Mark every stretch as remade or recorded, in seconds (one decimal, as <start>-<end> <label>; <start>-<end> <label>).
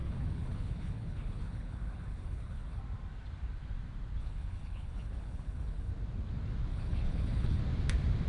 0.0-2.8 remade; 2.8-4.2 recorded; 4.2-5.9 remade; 5.9-6.7 recorded; 6.7-7.6 remade; 7.6-8.3 recorded